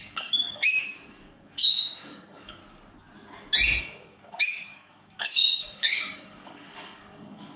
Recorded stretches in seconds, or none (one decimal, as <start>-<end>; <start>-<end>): 2.6-3.8